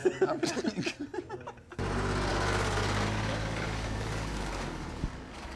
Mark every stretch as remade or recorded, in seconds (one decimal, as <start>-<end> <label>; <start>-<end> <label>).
0.0-2.3 recorded; 2.3-5.6 remade